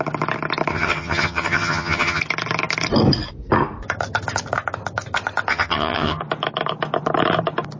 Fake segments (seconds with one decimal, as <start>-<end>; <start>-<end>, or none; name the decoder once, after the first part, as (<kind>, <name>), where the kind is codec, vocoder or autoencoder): 0.7-2.2 (vocoder, HiFi-GAN); 5.5-6.2